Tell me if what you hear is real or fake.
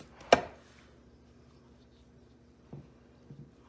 real